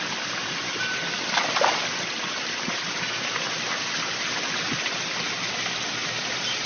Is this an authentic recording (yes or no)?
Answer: yes